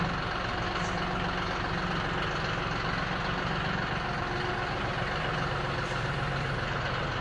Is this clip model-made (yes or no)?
no